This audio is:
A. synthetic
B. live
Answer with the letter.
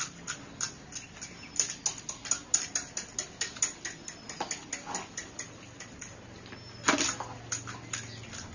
B